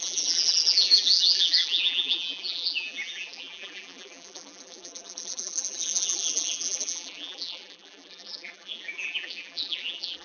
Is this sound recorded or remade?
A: remade